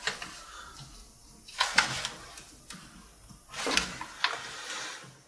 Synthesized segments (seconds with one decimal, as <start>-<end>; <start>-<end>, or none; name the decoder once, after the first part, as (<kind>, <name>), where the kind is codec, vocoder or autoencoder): none